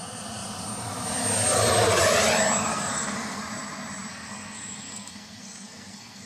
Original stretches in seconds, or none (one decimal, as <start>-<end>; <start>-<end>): 0.0-2.7; 3.4-4.1